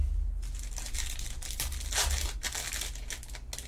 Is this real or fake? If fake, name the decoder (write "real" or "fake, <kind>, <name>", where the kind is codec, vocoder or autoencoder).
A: real